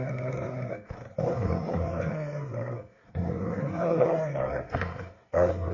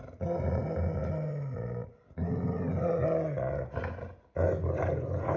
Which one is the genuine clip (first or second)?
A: second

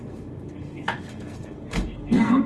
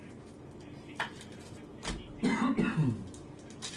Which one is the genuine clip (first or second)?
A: second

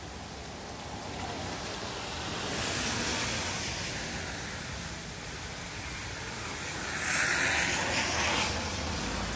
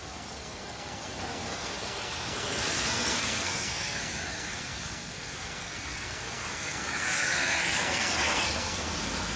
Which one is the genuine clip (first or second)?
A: first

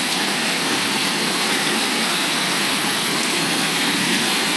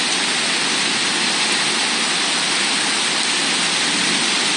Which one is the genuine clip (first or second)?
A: second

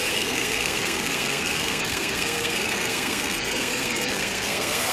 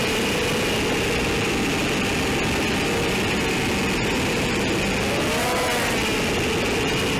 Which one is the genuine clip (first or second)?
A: second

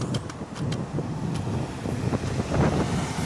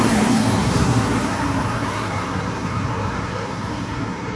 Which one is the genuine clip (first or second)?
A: first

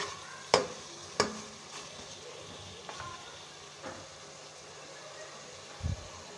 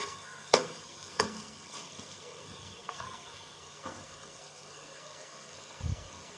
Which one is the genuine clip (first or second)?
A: first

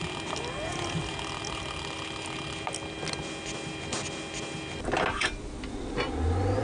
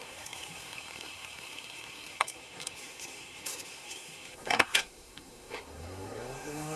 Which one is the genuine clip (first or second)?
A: first